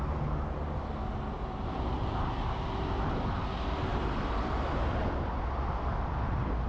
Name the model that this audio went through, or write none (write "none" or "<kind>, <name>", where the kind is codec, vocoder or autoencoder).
none